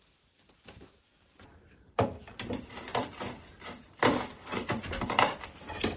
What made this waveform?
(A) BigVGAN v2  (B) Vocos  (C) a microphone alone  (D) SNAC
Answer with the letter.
A